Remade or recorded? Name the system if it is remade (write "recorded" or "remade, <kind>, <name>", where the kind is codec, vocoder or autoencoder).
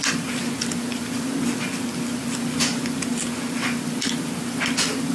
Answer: remade, vocoder, BigVGAN v2